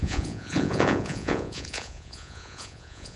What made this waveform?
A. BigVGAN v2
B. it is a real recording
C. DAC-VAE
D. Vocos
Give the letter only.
D